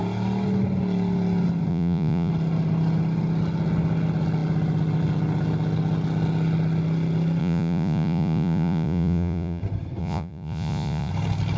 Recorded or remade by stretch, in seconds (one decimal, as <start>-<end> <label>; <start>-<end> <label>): 0.0-1.7 recorded; 1.7-2.3 remade; 2.3-7.4 recorded; 7.4-9.6 remade; 9.6-10.0 recorded; 10.0-11.1 remade; 11.1-11.6 recorded